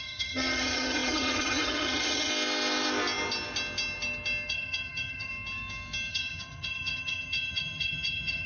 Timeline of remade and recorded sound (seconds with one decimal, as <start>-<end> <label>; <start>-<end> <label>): 0.0-2.3 remade; 2.3-4.5 recorded; 4.5-5.3 remade; 5.3-6.1 recorded; 6.1-8.5 remade